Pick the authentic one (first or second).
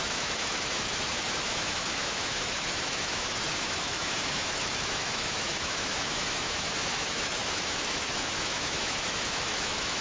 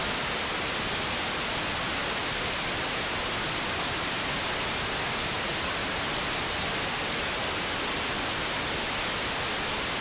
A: second